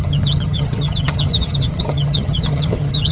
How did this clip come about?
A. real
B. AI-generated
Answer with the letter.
B